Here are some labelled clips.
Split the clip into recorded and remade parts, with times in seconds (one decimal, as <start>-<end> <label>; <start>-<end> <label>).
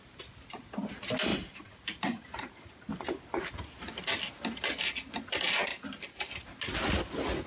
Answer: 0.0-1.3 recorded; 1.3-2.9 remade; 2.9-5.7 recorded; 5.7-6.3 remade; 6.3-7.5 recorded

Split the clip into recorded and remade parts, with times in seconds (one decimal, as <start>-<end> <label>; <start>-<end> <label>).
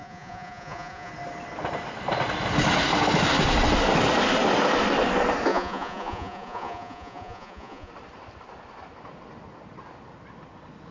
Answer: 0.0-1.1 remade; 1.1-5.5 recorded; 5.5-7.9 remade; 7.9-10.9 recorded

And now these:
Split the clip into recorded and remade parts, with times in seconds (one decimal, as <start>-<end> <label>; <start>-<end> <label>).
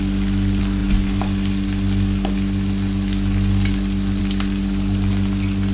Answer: 0.0-5.7 recorded